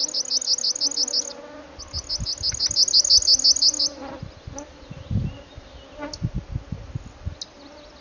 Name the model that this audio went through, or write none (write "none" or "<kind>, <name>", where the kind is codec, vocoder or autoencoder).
none